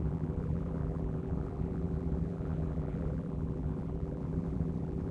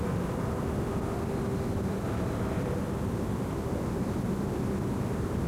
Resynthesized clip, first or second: first